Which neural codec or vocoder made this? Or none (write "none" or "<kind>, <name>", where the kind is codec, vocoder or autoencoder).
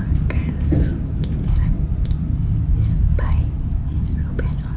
none